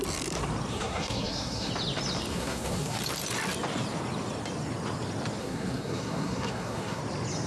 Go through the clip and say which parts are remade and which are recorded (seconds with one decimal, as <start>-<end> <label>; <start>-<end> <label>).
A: 0.0-0.7 recorded; 0.7-1.7 remade; 1.7-2.3 recorded; 2.3-3.0 remade; 3.0-5.4 recorded; 5.4-7.0 remade; 7.0-7.5 recorded